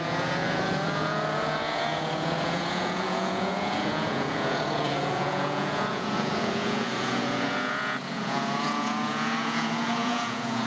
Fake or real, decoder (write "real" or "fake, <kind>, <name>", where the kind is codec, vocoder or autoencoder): fake, vocoder, Vocos